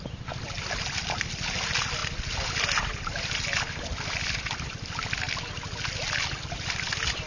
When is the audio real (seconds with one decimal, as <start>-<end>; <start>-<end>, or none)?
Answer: 0.0-7.3